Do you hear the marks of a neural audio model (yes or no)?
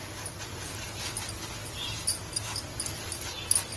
no